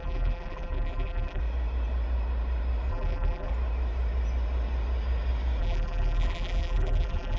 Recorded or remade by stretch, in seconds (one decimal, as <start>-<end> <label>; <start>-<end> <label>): 0.0-1.4 remade; 1.4-2.9 recorded; 2.9-3.5 remade; 3.5-5.6 recorded; 5.6-7.4 remade